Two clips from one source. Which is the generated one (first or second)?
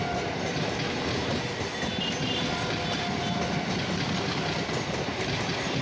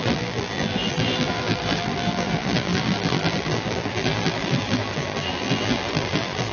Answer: second